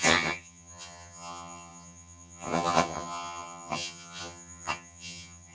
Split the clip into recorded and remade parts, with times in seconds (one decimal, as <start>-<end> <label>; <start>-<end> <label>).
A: 0.0-5.5 remade